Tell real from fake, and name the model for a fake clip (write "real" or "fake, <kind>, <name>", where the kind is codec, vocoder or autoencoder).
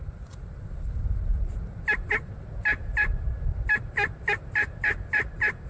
real